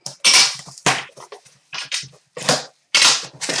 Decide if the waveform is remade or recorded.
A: recorded